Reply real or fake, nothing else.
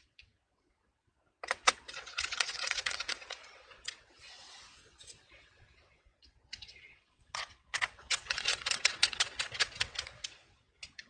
fake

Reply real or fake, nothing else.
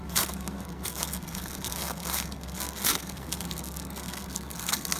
fake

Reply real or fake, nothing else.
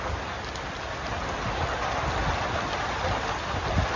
real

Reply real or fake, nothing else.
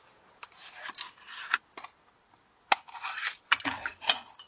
real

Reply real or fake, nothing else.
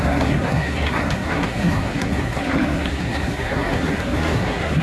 fake